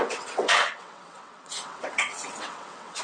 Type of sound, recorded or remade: remade